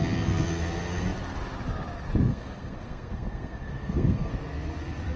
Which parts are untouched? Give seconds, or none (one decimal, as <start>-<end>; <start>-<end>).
0.0-2.3; 4.3-5.2